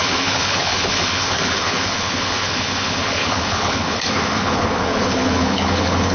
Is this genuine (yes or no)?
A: no